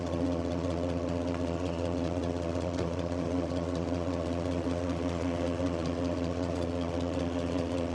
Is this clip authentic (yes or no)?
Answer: no